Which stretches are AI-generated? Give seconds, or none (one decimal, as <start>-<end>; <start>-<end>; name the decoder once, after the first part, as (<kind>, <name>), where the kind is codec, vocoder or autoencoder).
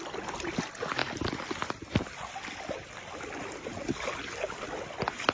none